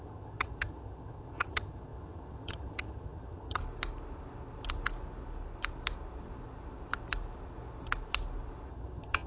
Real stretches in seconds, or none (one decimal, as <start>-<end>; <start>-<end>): 3.6-8.7